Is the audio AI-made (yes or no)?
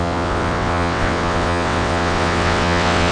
yes